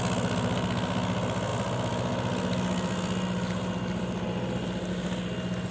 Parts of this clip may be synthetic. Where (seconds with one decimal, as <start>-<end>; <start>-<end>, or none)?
none